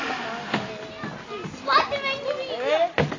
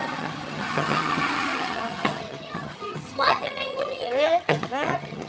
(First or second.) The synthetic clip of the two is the second